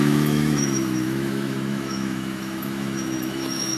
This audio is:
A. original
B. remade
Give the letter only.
B